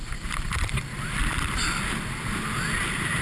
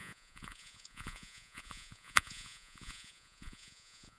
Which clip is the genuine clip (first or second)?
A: first